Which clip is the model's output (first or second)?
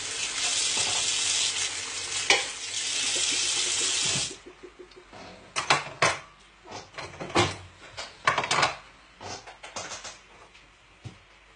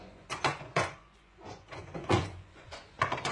second